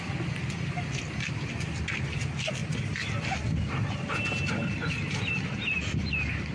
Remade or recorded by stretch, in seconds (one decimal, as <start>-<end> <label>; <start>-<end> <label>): 0.0-6.5 recorded